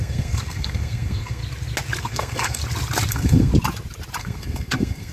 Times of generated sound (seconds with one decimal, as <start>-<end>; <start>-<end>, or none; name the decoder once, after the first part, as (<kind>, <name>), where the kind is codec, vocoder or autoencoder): 0.0-1.4 (codec, SNAC); 2.0-2.6; 3.1-3.5; 4.2-5.1